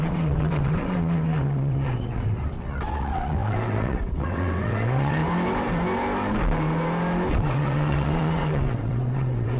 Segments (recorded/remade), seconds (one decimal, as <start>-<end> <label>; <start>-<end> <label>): 0.0-5.2 remade; 5.2-7.3 recorded; 7.3-9.6 remade